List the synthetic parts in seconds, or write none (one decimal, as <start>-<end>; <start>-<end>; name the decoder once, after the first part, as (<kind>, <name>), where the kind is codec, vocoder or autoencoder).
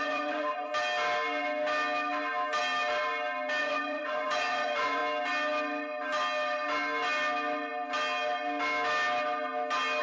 0.0-0.7 (vocoder, Vocos); 3.6-5.0